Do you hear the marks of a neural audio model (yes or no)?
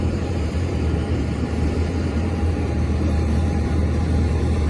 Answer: yes